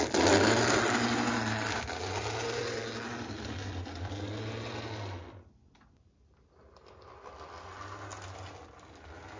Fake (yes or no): no